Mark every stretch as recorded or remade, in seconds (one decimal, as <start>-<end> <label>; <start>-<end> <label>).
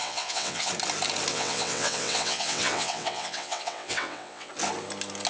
0.0-0.7 remade; 0.7-1.3 recorded; 1.3-4.5 remade; 4.5-5.3 recorded